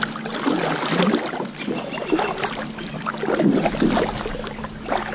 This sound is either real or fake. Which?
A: real